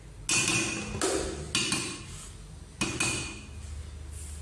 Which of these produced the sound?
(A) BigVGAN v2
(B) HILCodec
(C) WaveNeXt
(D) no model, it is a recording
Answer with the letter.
D